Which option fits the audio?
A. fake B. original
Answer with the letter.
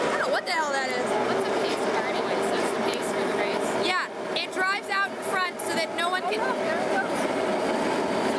B